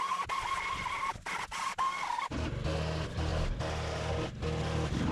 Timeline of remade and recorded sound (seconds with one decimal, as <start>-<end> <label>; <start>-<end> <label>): 0.0-5.1 recorded